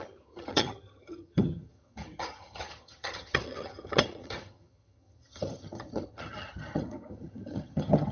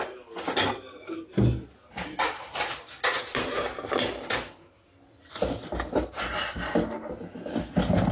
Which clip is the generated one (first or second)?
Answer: first